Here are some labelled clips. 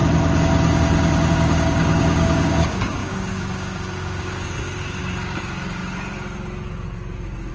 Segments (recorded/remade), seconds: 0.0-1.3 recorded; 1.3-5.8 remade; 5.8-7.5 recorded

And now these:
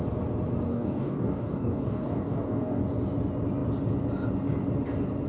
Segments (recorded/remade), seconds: 0.0-0.7 recorded; 0.7-2.8 remade; 2.8-5.3 recorded

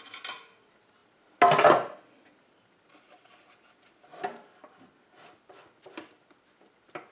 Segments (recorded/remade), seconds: 0.0-7.1 recorded

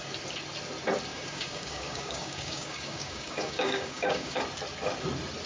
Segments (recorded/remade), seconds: 0.0-1.1 recorded; 1.1-4.4 remade; 4.4-5.5 recorded

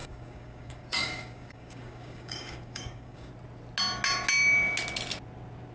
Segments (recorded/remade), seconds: 0.0-3.3 remade; 3.3-5.7 recorded